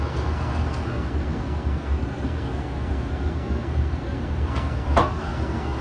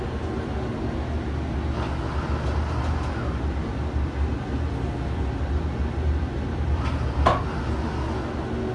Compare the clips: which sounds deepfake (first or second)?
first